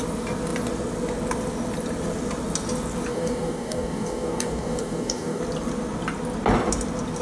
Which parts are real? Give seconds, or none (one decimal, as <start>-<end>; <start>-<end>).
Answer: 0.0-3.1; 5.4-7.2